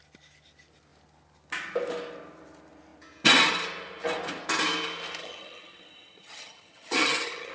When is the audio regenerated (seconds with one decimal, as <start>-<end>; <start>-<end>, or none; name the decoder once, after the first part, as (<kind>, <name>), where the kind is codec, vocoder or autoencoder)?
5.2-7.5 (vocoder, HiFi-GAN)